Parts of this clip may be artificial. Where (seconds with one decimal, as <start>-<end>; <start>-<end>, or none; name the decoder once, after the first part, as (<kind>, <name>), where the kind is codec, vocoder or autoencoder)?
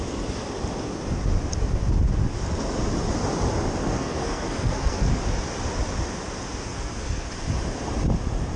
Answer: 3.8-5.2 (codec, SNAC); 6.7-7.3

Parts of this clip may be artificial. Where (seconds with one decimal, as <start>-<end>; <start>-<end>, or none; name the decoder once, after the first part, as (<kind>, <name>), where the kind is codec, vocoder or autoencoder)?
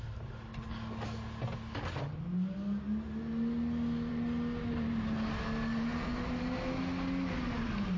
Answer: none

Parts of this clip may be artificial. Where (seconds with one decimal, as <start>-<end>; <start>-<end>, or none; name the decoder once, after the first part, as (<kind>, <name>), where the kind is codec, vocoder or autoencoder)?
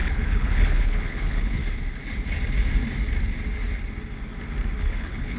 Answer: 0.0-1.6 (codec, HILCodec); 4.8-5.4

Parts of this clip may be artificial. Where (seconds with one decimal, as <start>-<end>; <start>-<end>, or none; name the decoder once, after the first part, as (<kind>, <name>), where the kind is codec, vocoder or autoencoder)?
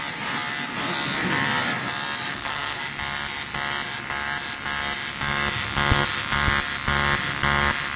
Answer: 2.3-2.8 (codec, SNAC)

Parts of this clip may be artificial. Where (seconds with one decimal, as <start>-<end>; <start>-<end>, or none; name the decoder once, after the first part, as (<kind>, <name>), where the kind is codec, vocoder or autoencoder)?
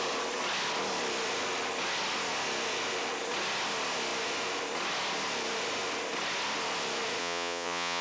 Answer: 7.2-8.0 (vocoder, Vocos)